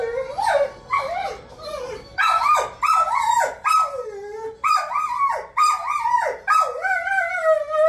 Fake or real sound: real